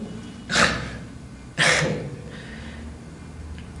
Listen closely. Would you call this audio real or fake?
real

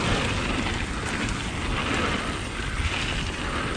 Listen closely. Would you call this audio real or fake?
real